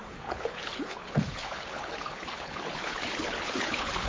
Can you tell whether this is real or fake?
fake